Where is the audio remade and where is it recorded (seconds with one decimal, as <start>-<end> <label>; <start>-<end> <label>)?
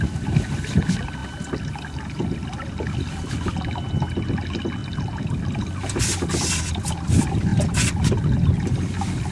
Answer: 0.0-4.8 recorded; 4.8-6.6 remade; 6.6-9.3 recorded